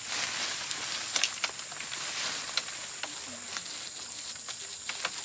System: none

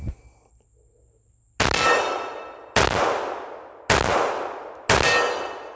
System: none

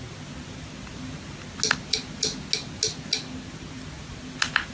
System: none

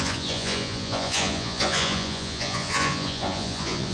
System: vocoder, Vocos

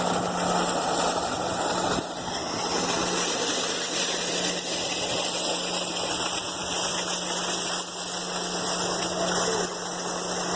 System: none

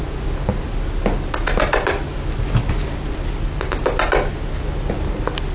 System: none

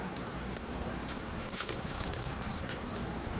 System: codec, SNAC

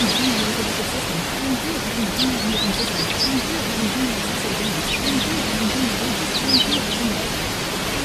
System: none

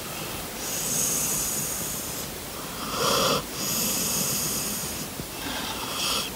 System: none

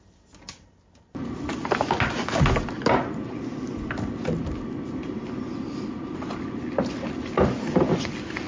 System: none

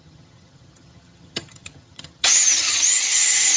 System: vocoder, HiFi-GAN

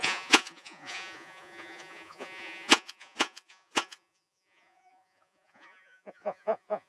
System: vocoder, Vocos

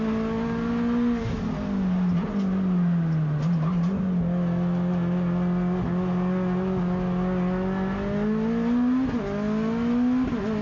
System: none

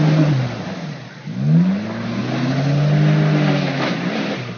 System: none